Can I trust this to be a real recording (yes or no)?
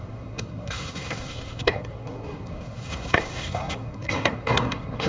no